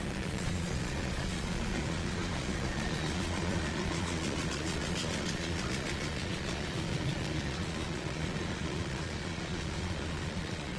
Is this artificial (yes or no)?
yes